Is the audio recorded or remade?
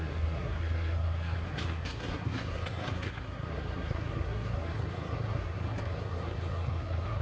remade